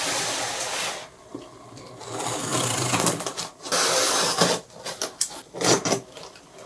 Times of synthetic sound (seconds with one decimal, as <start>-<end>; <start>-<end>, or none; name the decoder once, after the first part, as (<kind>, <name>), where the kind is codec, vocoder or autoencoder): none